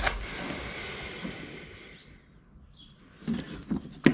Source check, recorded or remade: recorded